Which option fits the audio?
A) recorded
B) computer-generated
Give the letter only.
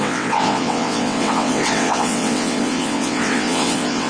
B